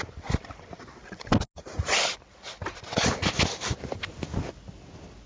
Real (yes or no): yes